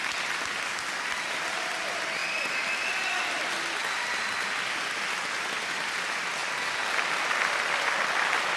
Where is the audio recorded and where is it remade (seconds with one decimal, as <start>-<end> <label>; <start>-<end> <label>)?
0.0-8.6 recorded